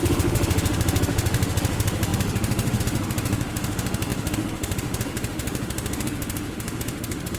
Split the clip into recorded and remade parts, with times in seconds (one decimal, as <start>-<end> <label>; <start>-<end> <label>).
0.0-7.4 remade